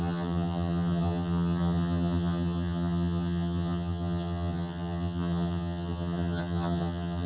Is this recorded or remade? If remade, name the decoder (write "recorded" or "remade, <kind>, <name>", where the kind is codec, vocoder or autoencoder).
remade, vocoder, HiFi-GAN